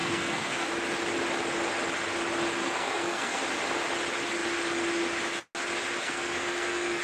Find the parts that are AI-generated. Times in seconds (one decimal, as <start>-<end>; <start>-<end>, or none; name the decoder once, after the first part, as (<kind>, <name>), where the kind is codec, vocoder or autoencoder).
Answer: 0.0-0.7 (codec, SNAC); 2.6-3.4; 6.0-7.0